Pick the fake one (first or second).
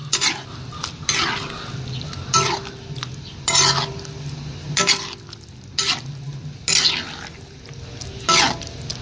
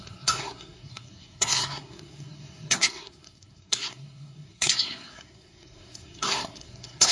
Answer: second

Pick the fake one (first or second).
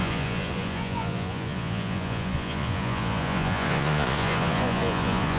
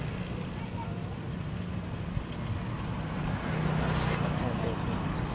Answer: first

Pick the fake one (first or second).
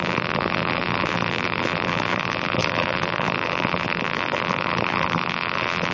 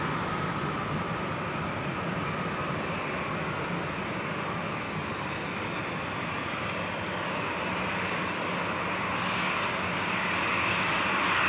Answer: first